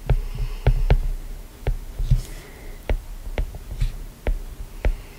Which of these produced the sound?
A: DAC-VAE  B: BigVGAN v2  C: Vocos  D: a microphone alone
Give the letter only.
D